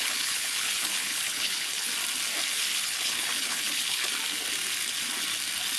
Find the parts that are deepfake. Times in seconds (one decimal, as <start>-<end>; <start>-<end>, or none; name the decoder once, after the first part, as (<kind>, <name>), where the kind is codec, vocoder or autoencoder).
0.0-1.9 (codec, HILCodec); 2.5-4.1